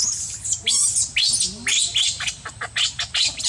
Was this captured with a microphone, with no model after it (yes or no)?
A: yes